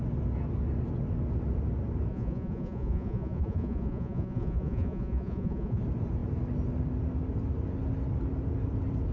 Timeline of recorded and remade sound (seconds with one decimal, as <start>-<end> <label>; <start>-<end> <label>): 0.0-2.1 recorded; 2.1-5.8 remade; 5.8-9.1 recorded